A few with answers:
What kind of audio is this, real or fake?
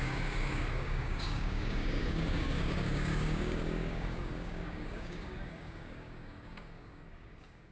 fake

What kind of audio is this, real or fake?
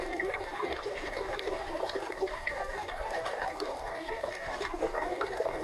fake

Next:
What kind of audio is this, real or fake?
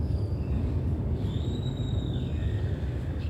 fake